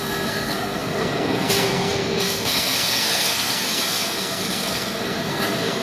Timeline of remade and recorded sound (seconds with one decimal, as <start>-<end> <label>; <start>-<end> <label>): 0.0-5.8 remade